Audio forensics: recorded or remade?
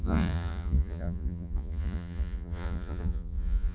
remade